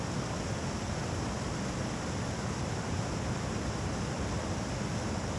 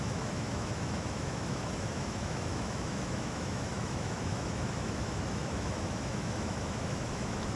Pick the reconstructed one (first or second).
second